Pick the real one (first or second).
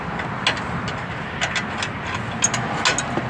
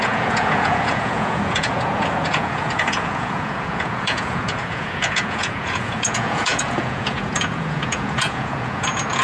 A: first